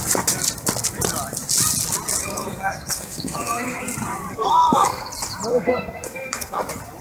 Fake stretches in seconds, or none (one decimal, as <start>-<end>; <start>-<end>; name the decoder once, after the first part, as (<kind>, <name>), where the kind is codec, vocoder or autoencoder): 2.2-3.8 (codec, SNAC); 4.3-5.1; 5.5-6.6